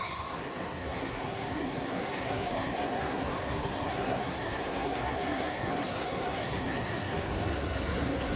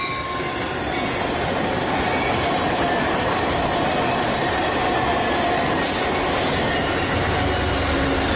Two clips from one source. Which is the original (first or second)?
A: second